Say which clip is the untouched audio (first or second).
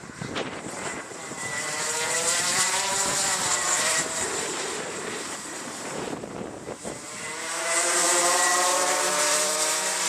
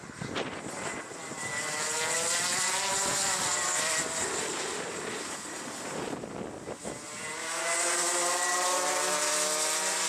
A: second